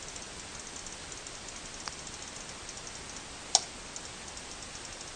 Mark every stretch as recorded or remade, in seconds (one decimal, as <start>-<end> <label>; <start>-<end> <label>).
0.0-5.2 recorded